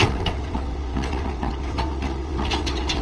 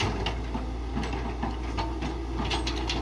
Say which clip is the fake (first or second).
first